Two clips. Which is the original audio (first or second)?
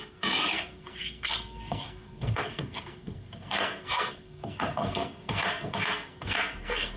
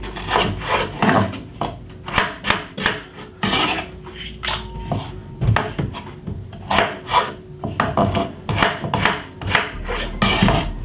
second